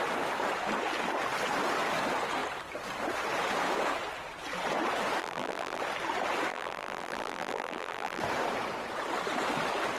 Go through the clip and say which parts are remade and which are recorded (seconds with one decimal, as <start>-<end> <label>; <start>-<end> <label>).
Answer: 0.0-5.2 recorded; 5.2-5.8 remade; 5.8-6.5 recorded; 6.5-8.2 remade; 8.2-10.0 recorded

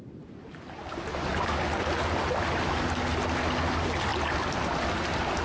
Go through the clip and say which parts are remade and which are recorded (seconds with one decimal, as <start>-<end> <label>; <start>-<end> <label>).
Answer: 0.0-5.4 recorded

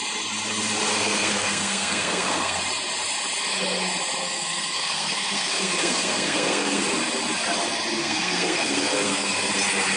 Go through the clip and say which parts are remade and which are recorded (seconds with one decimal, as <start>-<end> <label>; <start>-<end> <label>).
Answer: 0.0-0.9 recorded; 0.9-2.6 remade; 2.6-4.2 recorded; 4.2-6.8 remade; 6.8-8.0 recorded; 8.0-9.5 remade; 9.5-10.0 recorded

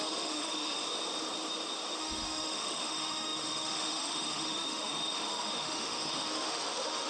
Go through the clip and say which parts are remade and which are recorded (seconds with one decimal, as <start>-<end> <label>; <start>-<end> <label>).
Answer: 0.0-0.8 remade; 0.8-2.0 recorded; 2.0-7.1 remade

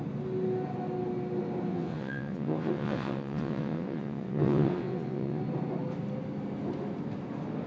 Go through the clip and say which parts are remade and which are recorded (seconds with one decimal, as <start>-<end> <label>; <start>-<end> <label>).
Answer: 0.0-1.7 recorded; 1.7-5.4 remade; 5.4-7.7 recorded

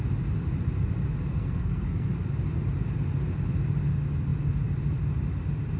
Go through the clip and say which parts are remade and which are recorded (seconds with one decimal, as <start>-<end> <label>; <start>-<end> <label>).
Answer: 0.0-1.3 recorded; 1.3-2.1 remade; 2.1-5.8 recorded

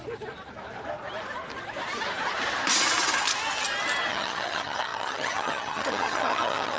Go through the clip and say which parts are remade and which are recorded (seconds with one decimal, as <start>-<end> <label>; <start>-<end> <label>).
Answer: 0.0-4.1 recorded; 4.1-6.8 remade

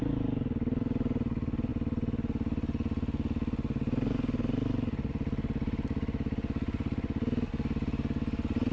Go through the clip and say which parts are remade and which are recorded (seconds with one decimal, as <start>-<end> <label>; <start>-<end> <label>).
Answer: 0.0-8.7 recorded